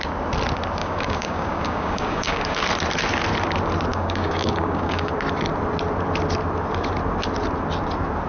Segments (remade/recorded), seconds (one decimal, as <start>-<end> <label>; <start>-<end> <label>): 0.0-0.8 recorded; 0.8-2.6 remade; 2.6-3.9 recorded; 3.9-5.1 remade; 5.1-8.3 recorded